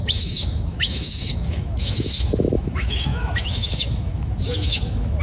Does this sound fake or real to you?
fake